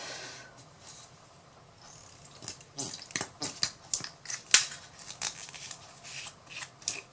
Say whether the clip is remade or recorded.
recorded